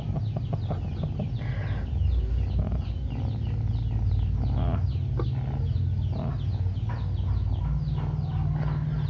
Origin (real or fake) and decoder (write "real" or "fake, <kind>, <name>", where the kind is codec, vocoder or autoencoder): real